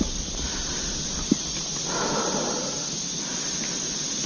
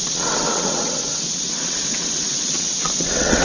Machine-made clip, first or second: second